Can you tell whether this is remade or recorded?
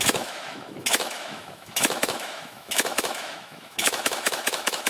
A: remade